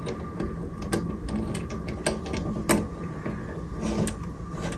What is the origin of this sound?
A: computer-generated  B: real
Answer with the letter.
B